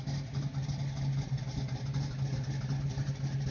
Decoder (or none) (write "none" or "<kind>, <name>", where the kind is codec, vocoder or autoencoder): none